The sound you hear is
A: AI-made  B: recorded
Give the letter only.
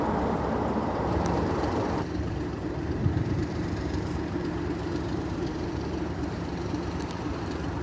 A